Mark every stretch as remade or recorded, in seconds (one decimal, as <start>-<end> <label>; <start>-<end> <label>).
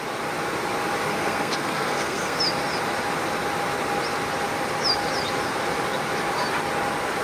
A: 0.0-1.1 recorded; 1.1-2.4 remade; 2.4-7.2 recorded